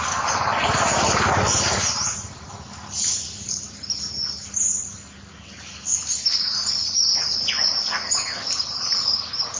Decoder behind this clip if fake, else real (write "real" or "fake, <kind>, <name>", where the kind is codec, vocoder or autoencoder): real